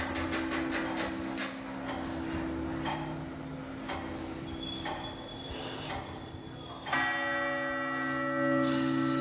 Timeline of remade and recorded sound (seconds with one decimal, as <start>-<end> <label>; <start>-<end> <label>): 0.0-9.2 recorded